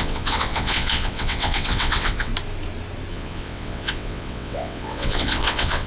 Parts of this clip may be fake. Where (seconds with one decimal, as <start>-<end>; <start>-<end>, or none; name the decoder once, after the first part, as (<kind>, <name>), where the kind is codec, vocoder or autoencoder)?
0.0-2.3 (vocoder, WaveNeXt); 3.1-5.9